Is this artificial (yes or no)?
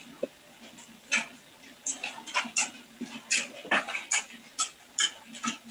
no